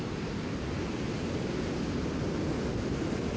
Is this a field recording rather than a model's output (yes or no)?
yes